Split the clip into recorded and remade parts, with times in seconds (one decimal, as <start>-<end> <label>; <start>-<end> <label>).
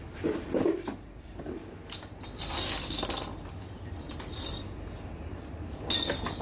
0.0-1.8 remade; 1.8-3.5 recorded; 3.5-6.4 remade